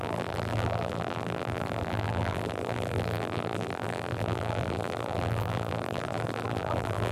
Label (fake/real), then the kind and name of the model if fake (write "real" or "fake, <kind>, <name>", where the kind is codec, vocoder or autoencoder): fake, vocoder, BigVGAN v2